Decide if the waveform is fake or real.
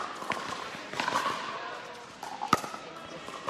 real